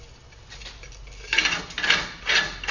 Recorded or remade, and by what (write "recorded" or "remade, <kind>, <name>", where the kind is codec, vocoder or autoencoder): recorded